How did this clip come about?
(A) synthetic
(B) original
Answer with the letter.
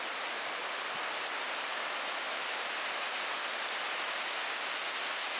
B